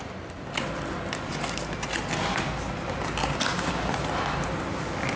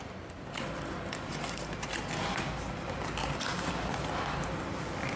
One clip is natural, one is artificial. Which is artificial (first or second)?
second